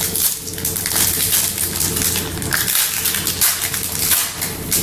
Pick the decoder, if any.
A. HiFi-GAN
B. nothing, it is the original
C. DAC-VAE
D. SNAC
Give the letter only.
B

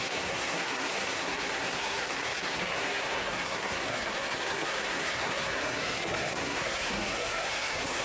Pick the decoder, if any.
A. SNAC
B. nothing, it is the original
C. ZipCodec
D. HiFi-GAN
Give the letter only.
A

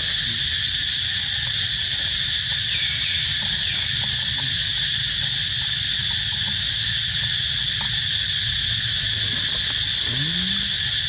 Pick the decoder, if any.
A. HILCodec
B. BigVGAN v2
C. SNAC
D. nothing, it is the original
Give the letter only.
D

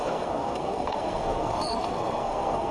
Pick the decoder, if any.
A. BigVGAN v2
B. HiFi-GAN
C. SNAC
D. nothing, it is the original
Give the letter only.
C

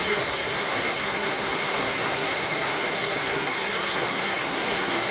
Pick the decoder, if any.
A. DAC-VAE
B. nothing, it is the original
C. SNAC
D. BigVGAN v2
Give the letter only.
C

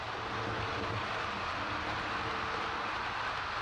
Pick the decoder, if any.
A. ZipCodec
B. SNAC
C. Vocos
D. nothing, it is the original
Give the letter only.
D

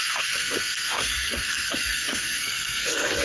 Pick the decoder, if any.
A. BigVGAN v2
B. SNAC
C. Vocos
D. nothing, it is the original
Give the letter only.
B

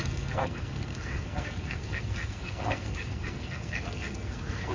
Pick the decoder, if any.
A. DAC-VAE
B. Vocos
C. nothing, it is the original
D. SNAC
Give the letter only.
D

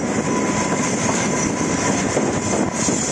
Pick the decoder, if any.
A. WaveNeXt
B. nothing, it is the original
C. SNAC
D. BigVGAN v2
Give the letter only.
B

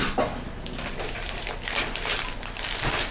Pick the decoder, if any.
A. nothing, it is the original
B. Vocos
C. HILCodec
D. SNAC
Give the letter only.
A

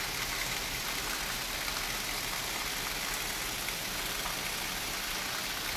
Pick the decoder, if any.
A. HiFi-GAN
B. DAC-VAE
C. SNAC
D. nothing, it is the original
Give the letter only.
D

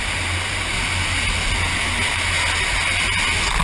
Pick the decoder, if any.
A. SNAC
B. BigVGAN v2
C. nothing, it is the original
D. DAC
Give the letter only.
C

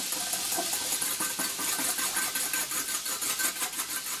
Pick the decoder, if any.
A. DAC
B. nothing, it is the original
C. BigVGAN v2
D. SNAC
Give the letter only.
B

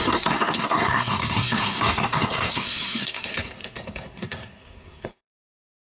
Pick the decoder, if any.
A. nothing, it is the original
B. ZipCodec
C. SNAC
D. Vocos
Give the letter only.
C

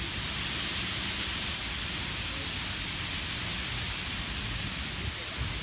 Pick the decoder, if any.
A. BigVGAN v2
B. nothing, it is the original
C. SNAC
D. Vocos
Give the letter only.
B